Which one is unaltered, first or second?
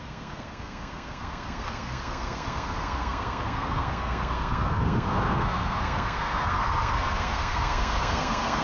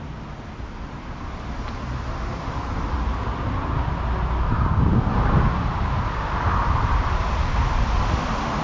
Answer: second